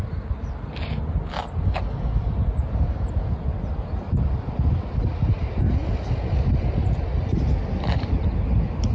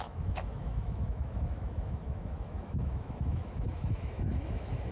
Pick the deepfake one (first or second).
second